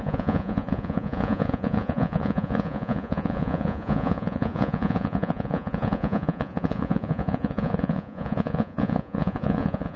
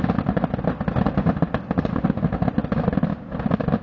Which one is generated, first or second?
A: first